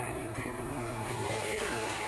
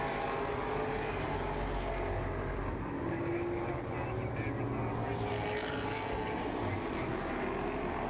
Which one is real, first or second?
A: second